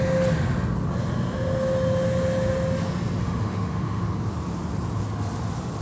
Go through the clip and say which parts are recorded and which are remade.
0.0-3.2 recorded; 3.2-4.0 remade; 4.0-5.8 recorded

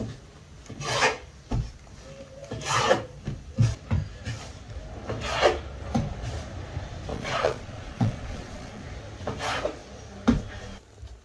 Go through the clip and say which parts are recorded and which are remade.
0.0-7.1 recorded; 7.1-8.8 remade; 8.8-11.2 recorded